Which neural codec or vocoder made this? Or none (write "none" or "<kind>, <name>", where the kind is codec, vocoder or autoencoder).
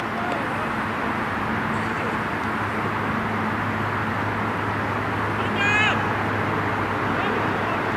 none